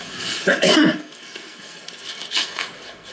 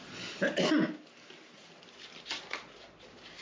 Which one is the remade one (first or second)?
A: first